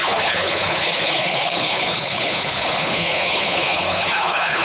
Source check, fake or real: fake